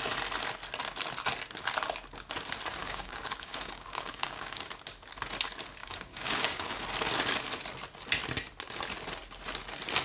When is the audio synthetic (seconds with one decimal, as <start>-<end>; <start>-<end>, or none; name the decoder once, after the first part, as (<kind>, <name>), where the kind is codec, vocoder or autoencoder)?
2.8-4.7 (codec, DAC); 5.8-6.8